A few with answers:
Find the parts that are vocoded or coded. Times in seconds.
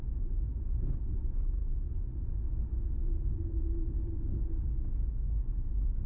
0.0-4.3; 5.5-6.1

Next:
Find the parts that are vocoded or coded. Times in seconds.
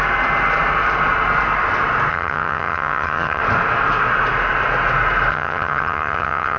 2.1-3.4; 5.3-6.6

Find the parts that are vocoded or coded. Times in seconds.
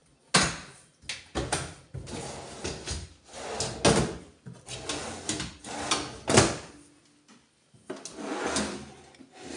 none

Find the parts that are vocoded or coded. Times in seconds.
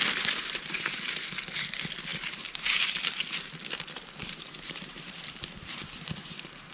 2.1-3.2; 4.2-6.7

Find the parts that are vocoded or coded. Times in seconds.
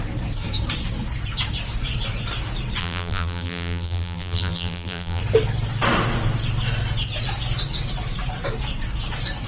2.8-5.2